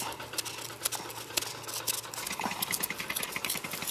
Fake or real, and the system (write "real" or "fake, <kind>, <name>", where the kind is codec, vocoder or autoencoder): real